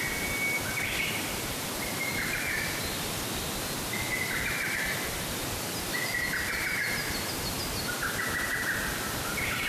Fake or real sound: real